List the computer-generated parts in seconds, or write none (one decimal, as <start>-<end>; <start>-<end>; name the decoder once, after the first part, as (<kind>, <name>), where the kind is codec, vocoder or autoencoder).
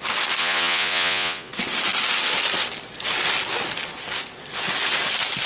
0.4-1.5 (vocoder, Vocos)